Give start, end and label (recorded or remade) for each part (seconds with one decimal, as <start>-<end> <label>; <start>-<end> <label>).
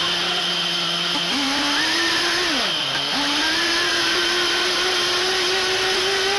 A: 0.0-6.4 recorded